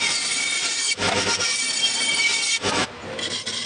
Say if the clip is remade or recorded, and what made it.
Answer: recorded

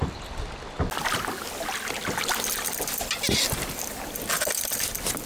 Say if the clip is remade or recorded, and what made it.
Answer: recorded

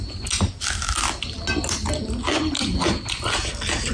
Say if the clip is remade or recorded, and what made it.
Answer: recorded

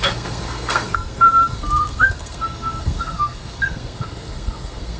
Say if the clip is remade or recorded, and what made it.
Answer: remade, codec, SNAC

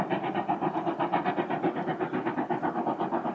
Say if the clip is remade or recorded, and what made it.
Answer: recorded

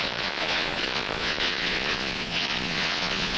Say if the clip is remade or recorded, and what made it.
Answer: remade, vocoder, Vocos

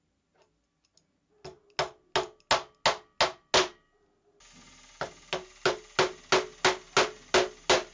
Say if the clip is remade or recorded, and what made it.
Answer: recorded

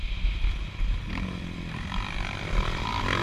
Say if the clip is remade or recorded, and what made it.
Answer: recorded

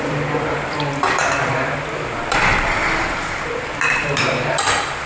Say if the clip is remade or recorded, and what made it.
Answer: remade, vocoder, BigVGAN v2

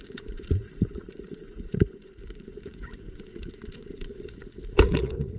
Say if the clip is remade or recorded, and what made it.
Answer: remade, vocoder, Vocos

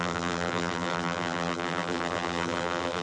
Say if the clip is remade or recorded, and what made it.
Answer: remade, vocoder, BigVGAN v2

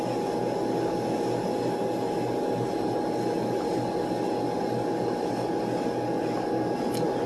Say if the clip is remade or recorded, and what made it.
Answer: recorded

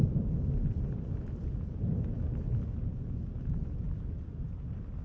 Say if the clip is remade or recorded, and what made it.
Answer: recorded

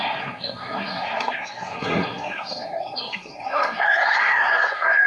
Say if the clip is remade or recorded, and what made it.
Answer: remade, codec, SNAC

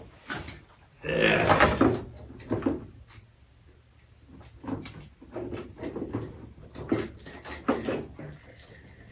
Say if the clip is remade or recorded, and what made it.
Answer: recorded